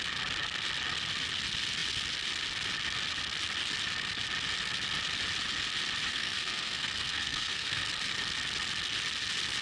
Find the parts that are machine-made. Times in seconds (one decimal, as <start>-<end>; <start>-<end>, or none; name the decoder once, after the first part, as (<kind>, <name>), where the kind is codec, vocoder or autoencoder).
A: 6.1-7.8 (codec, SNAC)